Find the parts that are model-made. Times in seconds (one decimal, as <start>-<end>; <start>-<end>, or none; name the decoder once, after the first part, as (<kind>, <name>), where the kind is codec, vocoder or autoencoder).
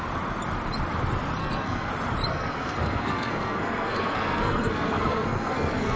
1.4-1.9 (codec, SNAC); 2.3-6.0